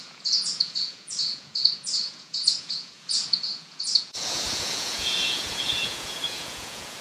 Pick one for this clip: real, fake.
fake